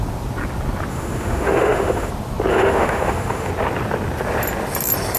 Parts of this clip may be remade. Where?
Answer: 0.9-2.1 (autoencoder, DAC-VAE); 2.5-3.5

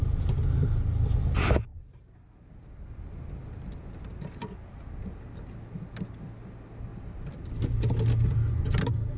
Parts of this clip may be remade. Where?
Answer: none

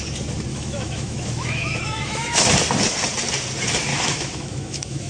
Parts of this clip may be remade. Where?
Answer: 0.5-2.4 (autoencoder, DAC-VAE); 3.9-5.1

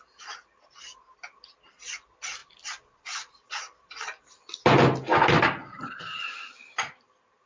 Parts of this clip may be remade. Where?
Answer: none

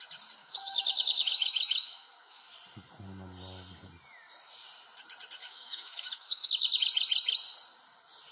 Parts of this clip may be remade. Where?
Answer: 0.4-2.5 (autoencoder, DAC-VAE); 5.4-6.5

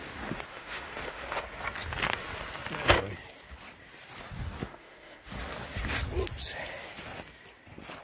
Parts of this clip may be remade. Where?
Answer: 0.5-1.4 (autoencoder, DAC-VAE); 4.6-5.3

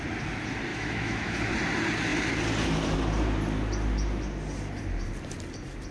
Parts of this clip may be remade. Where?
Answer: 0.7-1.4 (autoencoder, DAC-VAE)

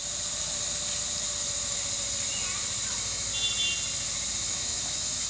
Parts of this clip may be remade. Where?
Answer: 2.9-3.3 (autoencoder, DAC-VAE); 4.3-5.3